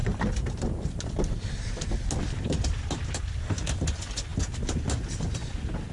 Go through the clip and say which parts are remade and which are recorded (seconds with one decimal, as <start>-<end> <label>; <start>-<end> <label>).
0.0-5.9 recorded